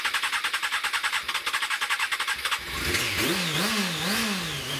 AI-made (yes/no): no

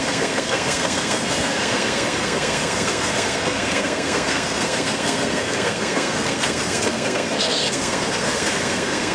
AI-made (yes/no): yes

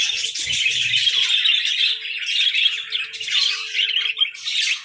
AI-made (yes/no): no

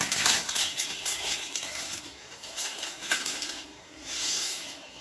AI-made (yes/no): yes